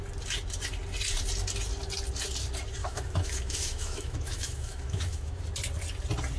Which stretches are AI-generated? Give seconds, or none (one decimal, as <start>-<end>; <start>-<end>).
2.8-5.4